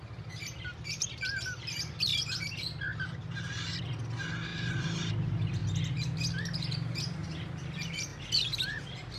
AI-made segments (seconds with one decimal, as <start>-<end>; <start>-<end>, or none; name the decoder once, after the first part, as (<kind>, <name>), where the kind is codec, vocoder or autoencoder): none

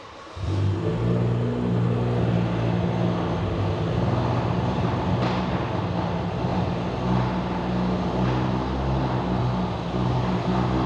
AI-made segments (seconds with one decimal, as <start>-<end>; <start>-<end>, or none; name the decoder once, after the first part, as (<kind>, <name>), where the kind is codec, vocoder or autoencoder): none

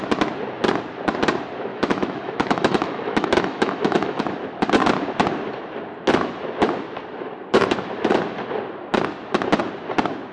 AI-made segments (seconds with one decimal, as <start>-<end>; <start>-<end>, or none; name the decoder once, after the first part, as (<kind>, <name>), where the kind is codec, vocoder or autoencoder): 1.7-4.2 (autoencoder, DAC-VAE)